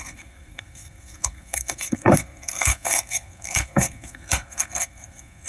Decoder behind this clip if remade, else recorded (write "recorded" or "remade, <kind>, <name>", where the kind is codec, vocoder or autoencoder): remade, codec, SNAC